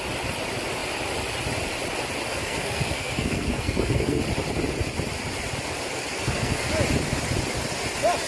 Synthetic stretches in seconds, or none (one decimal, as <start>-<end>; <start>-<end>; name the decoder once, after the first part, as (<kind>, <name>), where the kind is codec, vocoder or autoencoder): 2.3-4.2 (codec, SNAC); 6.1-6.7